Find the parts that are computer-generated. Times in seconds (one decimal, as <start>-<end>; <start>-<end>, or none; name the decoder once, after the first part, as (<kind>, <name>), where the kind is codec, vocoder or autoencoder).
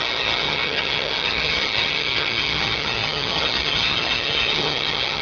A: 0.0-5.2 (vocoder, HiFi-GAN)